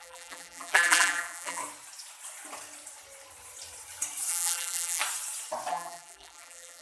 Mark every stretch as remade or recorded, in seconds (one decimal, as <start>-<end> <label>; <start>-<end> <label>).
0.0-1.6 remade; 1.6-4.3 recorded; 4.3-5.0 remade; 5.0-5.7 recorded; 5.7-6.8 remade